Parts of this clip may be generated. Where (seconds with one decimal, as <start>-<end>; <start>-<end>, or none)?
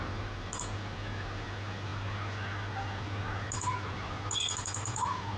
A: none